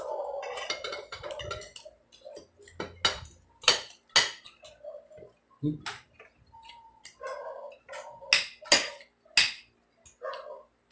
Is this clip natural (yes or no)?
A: yes